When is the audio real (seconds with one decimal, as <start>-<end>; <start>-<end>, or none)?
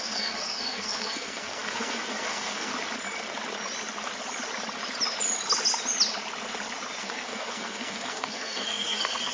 2.7-7.0